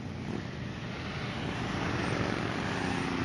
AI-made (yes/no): no